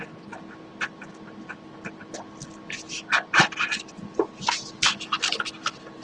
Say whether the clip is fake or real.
real